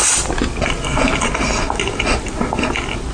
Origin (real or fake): real